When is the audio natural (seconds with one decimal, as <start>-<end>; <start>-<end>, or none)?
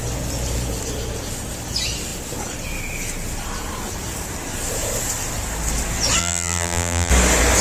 0.0-6.2; 7.1-7.6